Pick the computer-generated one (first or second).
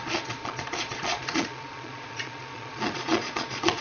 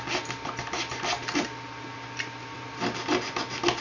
first